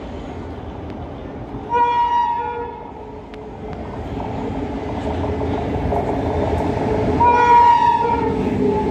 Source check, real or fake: real